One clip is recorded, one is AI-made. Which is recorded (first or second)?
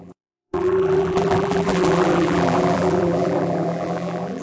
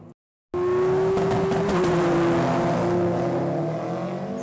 second